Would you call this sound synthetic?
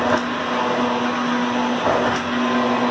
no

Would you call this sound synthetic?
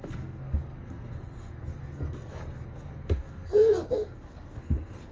yes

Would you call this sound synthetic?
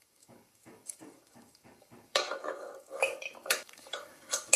yes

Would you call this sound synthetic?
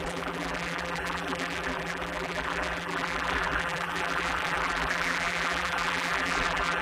yes